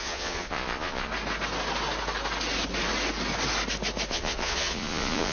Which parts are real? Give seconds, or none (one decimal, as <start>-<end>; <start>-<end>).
1.1-4.1